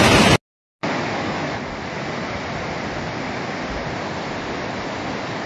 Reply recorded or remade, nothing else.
recorded